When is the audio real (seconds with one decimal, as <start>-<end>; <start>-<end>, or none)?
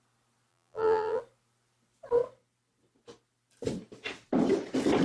0.0-0.5; 1.2-5.0